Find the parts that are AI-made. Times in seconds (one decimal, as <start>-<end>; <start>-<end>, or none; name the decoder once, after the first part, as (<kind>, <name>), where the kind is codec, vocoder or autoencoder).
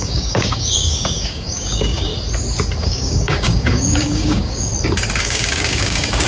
0.0-2.1 (codec, DAC); 2.8-4.7; 5.2-6.3